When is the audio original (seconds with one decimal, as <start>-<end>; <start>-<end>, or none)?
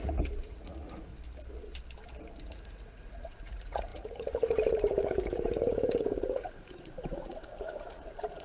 1.1-2.4